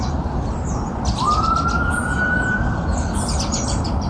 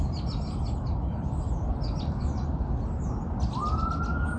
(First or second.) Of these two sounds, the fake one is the first